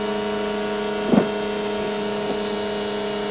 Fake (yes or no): no